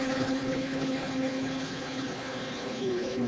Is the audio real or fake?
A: fake